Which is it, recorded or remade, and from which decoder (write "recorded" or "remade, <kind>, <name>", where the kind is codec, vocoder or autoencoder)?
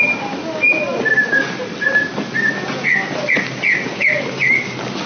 recorded